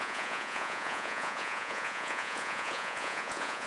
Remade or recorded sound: remade